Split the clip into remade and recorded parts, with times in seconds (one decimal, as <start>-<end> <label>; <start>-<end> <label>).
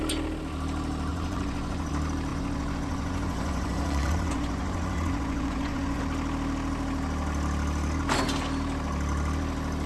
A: 0.0-1.1 recorded; 1.1-1.9 remade; 1.9-2.3 recorded; 2.3-6.0 remade; 6.0-9.9 recorded